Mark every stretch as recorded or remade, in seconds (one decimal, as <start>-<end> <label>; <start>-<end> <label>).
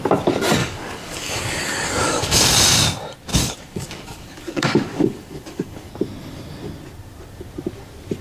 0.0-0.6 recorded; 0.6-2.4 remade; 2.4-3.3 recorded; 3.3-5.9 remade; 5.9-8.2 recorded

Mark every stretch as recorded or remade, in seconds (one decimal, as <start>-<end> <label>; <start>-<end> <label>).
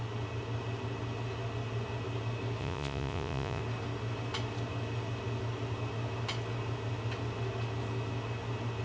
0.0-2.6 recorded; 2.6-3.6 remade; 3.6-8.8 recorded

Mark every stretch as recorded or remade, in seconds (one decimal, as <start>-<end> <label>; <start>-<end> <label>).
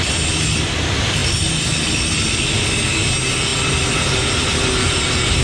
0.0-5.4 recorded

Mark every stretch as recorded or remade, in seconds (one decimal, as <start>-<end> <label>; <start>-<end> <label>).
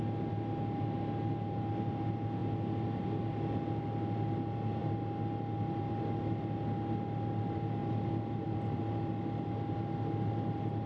0.0-7.8 recorded; 7.8-8.8 remade; 8.8-10.9 recorded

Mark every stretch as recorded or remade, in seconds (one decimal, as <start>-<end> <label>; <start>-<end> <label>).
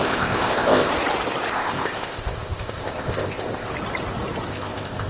0.0-0.9 remade; 0.9-1.5 recorded; 1.5-3.7 remade; 3.7-4.5 recorded; 4.5-5.1 remade